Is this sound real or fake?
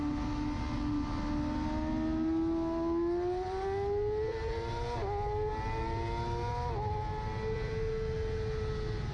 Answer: real